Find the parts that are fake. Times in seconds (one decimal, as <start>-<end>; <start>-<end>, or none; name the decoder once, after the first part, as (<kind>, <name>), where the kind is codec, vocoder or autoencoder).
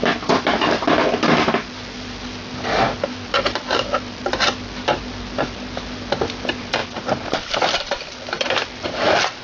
6.8-8.0 (vocoder, BigVGAN v2)